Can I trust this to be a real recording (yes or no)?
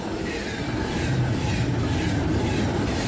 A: yes